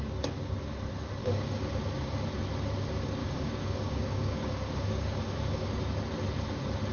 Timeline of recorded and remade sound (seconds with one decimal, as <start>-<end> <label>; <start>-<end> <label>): 0.0-1.2 recorded; 1.2-2.3 remade; 2.3-3.2 recorded; 3.2-5.8 remade; 5.8-6.9 recorded